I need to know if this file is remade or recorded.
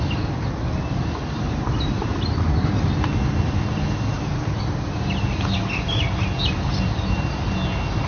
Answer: recorded